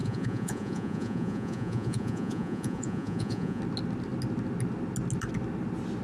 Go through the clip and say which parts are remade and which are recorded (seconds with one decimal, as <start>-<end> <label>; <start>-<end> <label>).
0.0-3.6 remade; 3.6-6.0 recorded